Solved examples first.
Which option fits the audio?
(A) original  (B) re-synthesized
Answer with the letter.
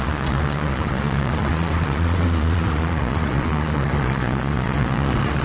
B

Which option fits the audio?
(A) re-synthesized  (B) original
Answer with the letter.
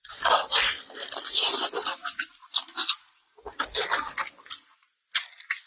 B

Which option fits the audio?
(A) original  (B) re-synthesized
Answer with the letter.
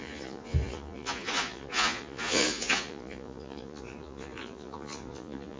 B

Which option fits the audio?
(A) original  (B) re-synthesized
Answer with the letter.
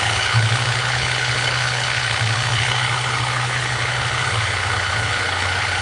B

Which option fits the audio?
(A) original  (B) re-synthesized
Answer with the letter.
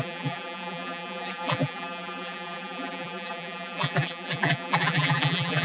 B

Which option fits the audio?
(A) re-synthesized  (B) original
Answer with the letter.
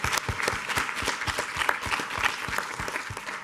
A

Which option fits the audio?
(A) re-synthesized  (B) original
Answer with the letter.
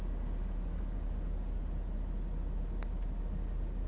B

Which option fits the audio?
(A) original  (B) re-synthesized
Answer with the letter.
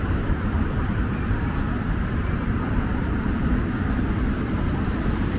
B